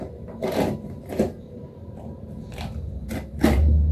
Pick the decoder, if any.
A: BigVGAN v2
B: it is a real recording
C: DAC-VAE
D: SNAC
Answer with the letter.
A